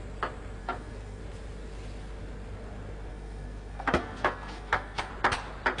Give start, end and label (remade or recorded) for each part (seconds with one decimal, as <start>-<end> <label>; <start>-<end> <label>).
0.0-0.6 recorded; 0.6-1.2 remade; 1.2-3.1 recorded; 3.1-5.1 remade; 5.1-5.8 recorded